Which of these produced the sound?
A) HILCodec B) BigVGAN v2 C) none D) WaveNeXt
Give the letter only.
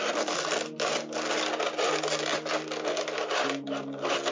C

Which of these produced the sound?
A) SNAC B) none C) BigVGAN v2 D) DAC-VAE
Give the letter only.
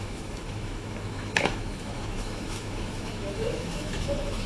D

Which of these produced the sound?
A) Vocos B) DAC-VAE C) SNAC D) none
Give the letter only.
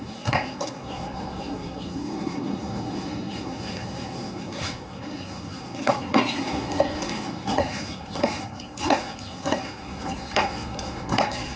C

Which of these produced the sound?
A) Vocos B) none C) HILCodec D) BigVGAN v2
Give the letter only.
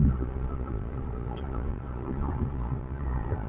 A